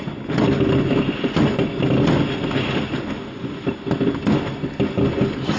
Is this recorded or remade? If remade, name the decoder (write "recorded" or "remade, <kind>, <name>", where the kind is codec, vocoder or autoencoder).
recorded